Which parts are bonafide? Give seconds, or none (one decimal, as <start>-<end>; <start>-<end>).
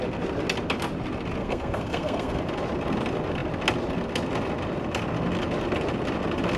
0.0-1.4; 2.4-6.6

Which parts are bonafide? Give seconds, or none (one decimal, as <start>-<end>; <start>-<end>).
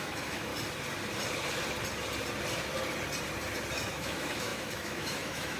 0.5-3.9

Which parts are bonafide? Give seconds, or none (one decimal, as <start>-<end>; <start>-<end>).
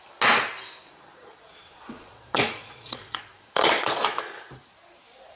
0.0-0.8; 4.0-5.4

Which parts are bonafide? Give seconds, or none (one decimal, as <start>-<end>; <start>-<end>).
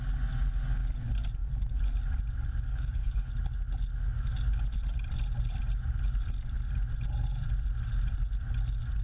0.0-2.7; 3.3-9.0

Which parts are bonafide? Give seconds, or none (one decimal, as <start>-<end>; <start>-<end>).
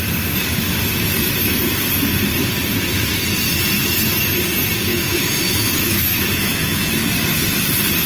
0.0-4.9; 6.9-8.1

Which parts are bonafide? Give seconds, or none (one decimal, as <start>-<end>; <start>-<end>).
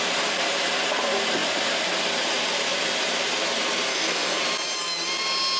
0.0-3.9; 4.4-5.6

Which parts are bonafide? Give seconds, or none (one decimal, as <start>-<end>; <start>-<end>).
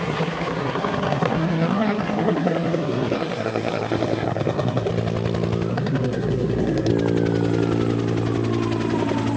4.9-5.7; 6.9-9.4